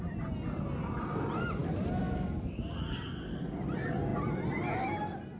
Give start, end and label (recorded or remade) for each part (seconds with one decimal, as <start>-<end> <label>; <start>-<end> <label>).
0.0-5.4 recorded